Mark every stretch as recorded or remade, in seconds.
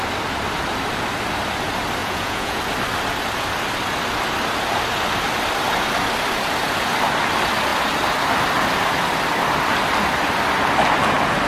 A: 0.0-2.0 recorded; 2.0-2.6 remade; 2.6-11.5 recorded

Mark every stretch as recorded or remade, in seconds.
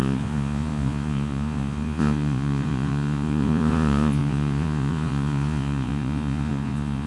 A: 0.0-7.1 remade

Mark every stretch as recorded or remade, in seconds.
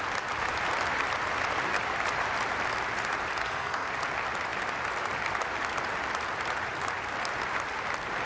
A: 0.0-3.4 recorded; 3.4-3.9 remade; 3.9-8.3 recorded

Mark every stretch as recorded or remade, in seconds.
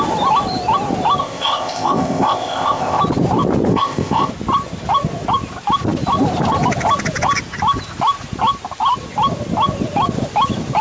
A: 0.0-1.2 recorded; 1.2-3.0 remade; 3.0-3.7 recorded; 3.7-4.3 remade; 4.3-10.8 recorded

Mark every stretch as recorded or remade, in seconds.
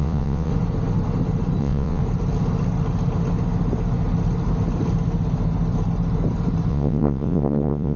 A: 0.0-0.5 remade; 0.5-1.6 recorded; 1.6-2.0 remade; 2.0-6.7 recorded; 6.7-8.0 remade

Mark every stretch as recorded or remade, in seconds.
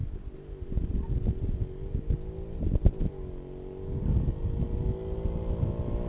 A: 0.0-6.1 recorded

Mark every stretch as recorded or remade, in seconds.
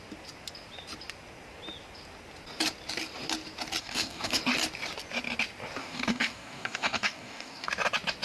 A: 0.0-3.8 recorded; 3.8-4.4 remade; 4.4-5.8 recorded; 5.8-7.7 remade; 7.7-8.2 recorded